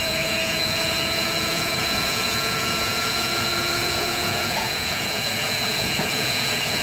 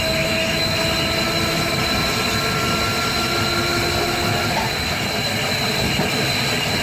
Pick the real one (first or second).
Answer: second